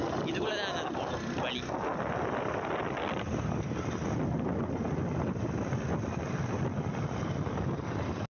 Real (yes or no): yes